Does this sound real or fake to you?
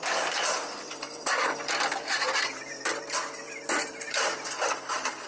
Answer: real